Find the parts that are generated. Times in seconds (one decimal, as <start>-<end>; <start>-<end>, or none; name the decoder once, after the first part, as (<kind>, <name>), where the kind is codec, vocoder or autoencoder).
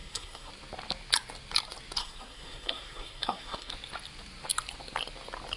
0.0-0.5 (codec, SNAC); 2.0-3.7